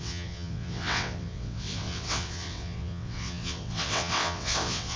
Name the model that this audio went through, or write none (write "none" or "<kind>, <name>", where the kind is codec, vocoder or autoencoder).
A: vocoder, WaveNeXt